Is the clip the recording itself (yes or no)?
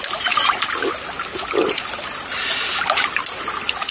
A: yes